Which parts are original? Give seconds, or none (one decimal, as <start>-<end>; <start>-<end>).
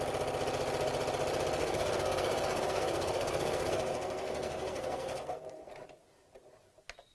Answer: 0.0-1.6; 5.7-7.1